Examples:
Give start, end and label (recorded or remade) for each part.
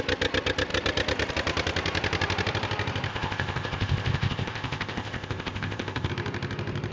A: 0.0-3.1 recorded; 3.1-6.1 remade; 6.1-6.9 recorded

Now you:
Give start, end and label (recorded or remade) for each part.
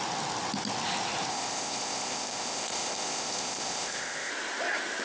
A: 0.0-1.3 recorded; 1.3-4.3 remade; 4.3-5.0 recorded